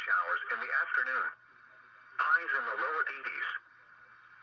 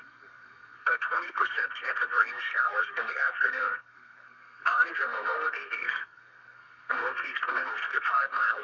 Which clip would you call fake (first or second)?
second